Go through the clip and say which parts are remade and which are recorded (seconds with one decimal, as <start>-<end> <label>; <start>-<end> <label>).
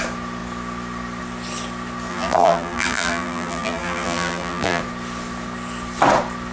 0.0-2.1 recorded; 2.1-4.8 remade; 4.8-6.5 recorded